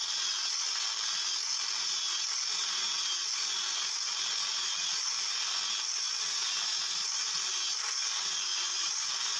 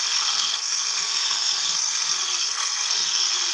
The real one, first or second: first